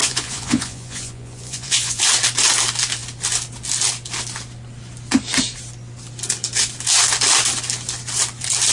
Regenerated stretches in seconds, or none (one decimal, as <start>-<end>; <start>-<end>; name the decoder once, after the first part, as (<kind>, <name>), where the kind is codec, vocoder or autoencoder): 0.0-2.0 (vocoder, Vocos)